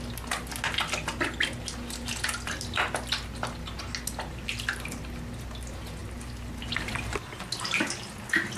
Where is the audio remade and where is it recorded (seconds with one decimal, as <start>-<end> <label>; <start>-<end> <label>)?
0.0-8.6 recorded